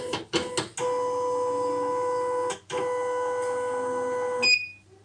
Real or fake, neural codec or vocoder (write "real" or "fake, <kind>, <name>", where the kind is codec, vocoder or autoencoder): real